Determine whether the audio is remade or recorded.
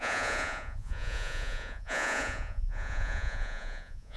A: remade